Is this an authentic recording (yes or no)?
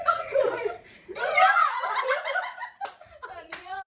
no